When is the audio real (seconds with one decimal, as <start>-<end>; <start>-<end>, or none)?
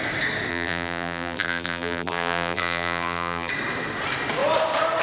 0.0-0.5; 3.5-5.0